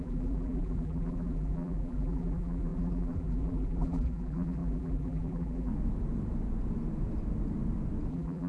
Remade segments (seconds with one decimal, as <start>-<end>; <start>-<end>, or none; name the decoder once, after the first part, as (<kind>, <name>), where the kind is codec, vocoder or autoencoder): 0.0-5.7 (vocoder, BigVGAN v2); 8.1-8.5